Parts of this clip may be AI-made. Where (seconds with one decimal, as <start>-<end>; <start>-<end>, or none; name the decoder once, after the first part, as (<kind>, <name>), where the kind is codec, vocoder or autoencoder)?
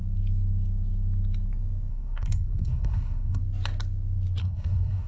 1.9-3.4 (codec, SNAC); 4.4-5.1